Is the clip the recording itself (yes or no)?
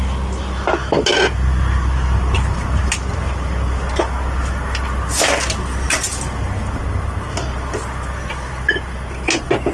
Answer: yes